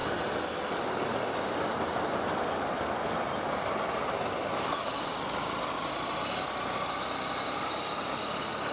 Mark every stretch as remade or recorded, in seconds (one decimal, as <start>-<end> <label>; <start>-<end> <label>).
0.0-8.7 recorded